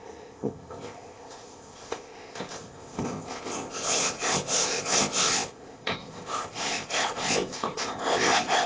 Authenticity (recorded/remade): remade